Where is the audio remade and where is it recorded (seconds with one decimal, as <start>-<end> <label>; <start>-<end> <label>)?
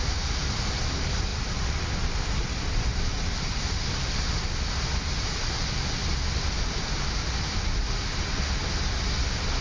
0.0-9.6 recorded